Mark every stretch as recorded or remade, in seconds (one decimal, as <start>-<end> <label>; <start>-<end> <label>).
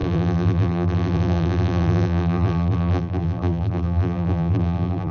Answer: 0.0-5.1 remade